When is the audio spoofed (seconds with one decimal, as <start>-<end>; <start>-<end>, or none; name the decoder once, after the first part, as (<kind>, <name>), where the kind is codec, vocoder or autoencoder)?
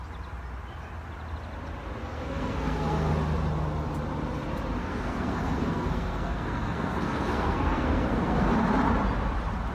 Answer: 2.0-3.1 (codec, SNAC); 4.8-8.5